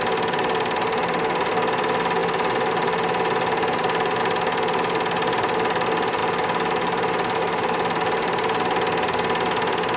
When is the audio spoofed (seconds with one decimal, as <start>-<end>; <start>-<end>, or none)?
none